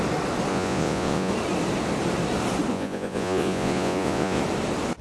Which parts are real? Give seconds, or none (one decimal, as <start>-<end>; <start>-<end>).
0.0-0.5; 1.3-2.7; 4.4-5.0